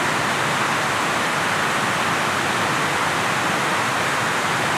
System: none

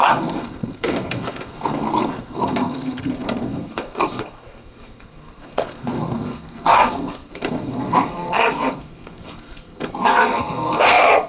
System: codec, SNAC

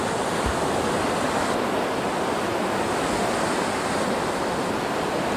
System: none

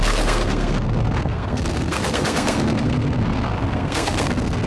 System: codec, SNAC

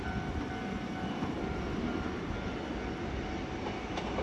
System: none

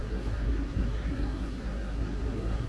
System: codec, SNAC